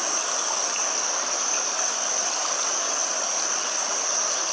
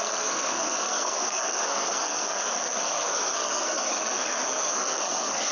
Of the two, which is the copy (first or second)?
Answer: second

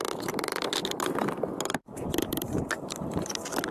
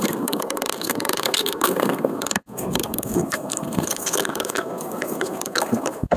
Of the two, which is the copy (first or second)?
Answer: second